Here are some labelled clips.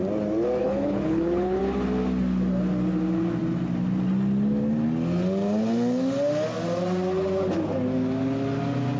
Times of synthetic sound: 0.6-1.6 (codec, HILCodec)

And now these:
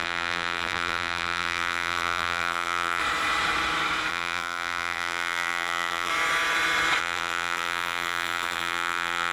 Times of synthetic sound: 0.0-3.0 (vocoder, BigVGAN v2); 4.1-6.1; 7.0-9.3